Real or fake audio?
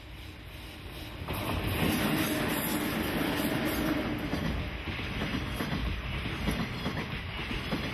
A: real